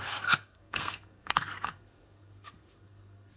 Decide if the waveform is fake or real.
fake